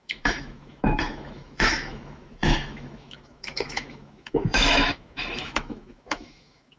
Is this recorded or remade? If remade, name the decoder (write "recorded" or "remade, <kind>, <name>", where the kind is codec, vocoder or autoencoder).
remade, autoencoder, DAC-VAE